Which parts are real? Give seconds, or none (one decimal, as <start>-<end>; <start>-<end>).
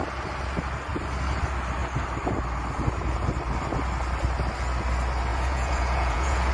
0.0-5.3